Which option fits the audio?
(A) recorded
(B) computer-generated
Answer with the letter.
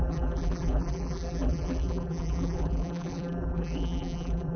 B